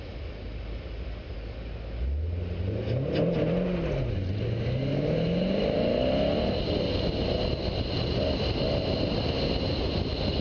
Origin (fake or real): real